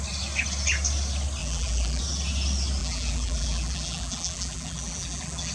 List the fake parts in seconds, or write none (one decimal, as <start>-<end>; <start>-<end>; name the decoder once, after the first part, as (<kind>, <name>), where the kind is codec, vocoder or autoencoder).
1.4-2.0 (vocoder, BigVGAN v2); 2.8-5.5